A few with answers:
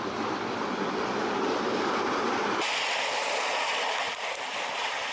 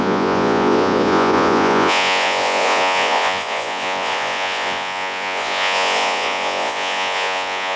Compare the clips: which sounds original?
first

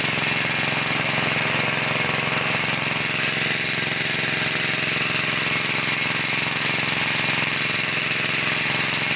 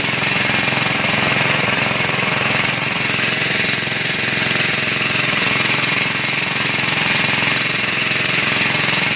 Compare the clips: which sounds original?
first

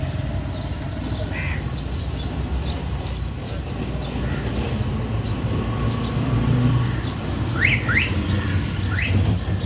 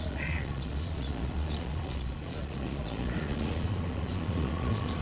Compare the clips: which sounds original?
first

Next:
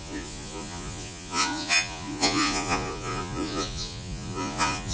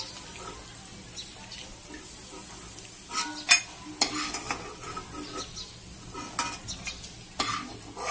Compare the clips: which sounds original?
second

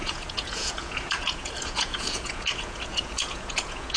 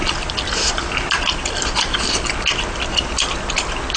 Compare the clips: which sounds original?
second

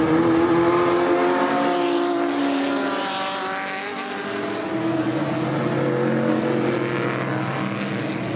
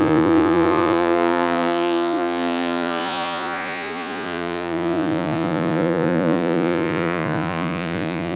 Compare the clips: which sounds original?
first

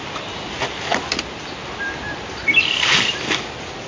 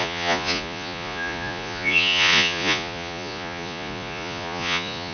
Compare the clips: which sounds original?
first